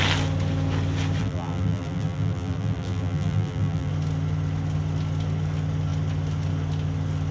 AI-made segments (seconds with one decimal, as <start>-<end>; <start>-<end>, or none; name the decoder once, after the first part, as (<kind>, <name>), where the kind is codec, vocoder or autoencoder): 1.2-3.9 (vocoder, BigVGAN v2)